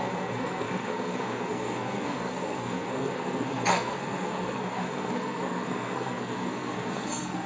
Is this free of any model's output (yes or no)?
no